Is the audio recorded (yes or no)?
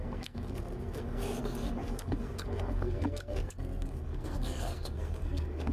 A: no